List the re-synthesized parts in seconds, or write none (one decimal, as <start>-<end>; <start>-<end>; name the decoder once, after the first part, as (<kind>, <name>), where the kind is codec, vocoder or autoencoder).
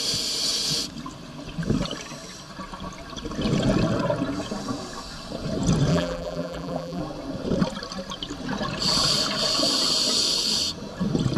5.9-7.0 (vocoder, BigVGAN v2)